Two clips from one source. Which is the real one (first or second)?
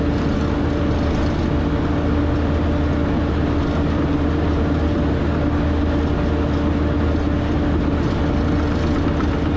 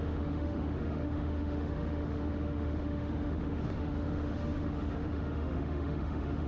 first